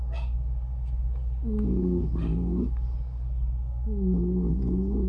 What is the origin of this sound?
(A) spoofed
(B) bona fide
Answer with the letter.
A